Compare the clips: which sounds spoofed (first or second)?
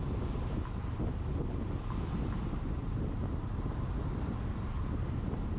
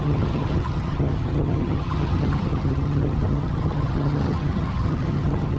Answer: second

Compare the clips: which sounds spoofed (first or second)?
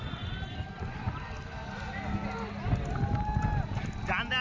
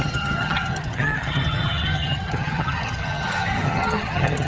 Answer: second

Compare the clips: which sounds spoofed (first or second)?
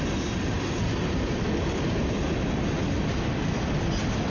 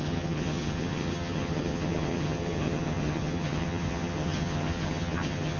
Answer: second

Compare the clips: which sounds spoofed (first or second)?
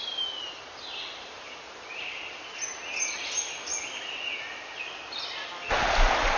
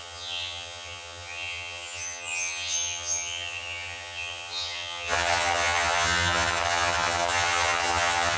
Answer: second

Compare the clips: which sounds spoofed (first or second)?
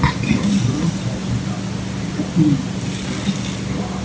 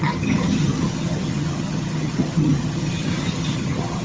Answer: second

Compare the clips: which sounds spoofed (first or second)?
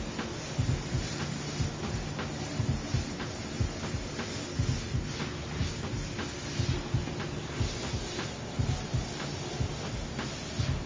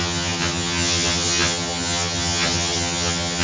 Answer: second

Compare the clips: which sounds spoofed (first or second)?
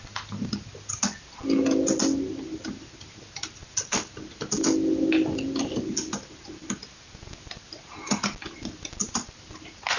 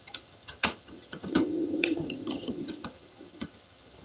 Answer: second